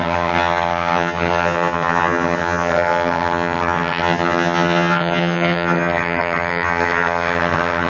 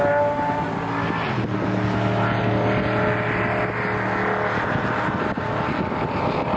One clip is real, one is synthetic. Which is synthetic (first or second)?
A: first